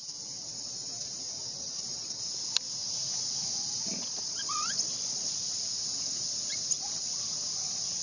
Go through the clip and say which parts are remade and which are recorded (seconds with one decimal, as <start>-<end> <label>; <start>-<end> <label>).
0.0-4.0 recorded; 4.0-5.3 remade; 5.3-8.0 recorded